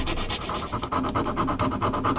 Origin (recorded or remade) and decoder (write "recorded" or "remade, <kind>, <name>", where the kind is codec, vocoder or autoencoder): recorded